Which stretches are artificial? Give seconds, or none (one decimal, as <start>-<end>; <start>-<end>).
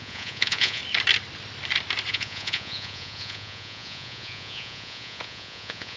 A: 0.0-0.8; 2.1-6.0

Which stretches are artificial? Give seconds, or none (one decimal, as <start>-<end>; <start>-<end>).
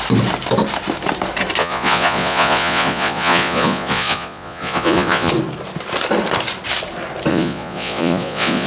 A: 1.6-5.3; 7.3-8.7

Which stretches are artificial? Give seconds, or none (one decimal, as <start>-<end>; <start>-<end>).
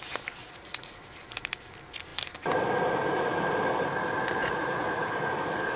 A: 0.4-1.0; 4.4-5.1